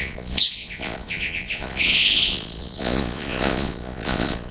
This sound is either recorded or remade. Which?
remade